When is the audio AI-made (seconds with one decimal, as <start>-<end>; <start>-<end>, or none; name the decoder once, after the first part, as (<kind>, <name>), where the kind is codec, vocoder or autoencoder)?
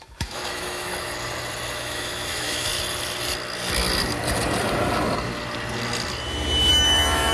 0.0-0.9 (autoencoder, DAC-VAE); 1.7-2.7; 6.7-7.3